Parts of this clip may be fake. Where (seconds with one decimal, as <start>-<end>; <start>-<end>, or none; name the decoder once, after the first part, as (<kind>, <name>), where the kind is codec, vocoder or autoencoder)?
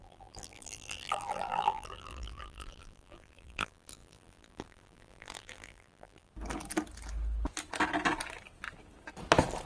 0.0-6.3 (vocoder, BigVGAN v2)